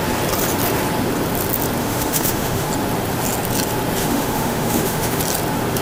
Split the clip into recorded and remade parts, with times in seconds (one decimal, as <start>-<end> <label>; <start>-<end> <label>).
0.0-1.8 recorded; 1.8-2.7 remade; 2.7-4.0 recorded; 4.0-5.2 remade; 5.2-5.8 recorded